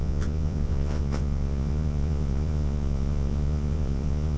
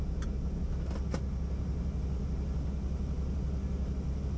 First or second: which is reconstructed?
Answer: first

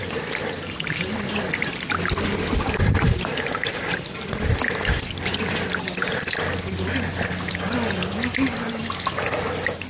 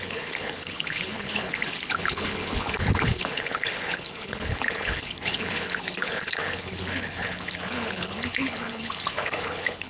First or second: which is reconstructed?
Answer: second